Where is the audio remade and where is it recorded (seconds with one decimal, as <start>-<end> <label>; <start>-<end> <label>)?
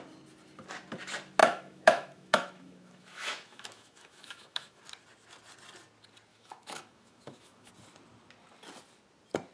0.0-1.4 recorded; 1.4-4.8 remade; 4.8-6.3 recorded; 6.3-7.7 remade; 7.7-9.5 recorded